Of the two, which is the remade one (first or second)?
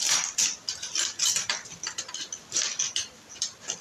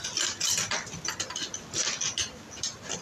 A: first